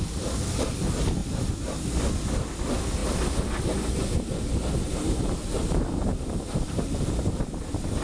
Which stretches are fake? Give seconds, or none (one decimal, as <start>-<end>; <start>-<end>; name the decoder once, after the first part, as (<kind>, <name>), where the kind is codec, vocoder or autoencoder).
1.2-2.1 (vocoder, BigVGAN v2); 3.0-3.7; 4.9-7.0

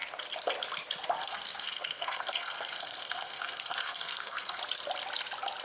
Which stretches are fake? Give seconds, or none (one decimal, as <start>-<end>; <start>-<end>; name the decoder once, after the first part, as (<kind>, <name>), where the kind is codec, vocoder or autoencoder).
1.2-4.6 (codec, SNAC)

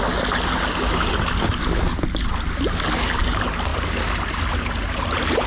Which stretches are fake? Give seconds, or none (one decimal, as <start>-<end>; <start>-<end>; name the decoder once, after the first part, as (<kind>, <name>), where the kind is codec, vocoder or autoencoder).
none